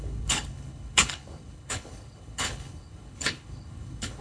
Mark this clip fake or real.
fake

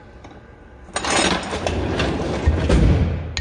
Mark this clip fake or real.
real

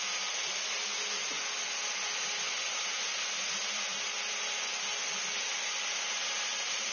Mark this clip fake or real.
real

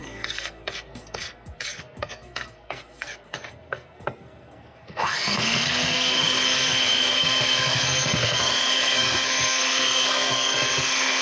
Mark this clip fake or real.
fake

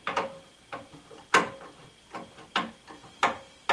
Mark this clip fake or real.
real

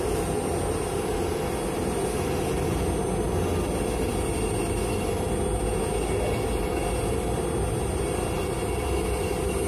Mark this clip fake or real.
real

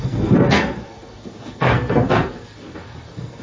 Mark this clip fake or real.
fake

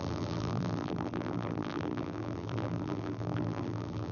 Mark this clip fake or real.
fake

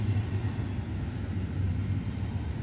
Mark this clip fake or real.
real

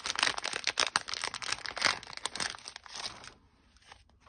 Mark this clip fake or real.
real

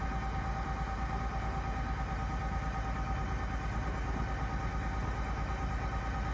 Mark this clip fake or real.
real